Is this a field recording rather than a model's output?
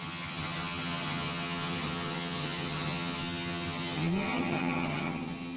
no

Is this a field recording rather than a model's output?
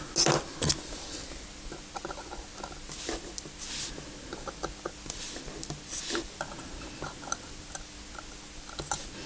yes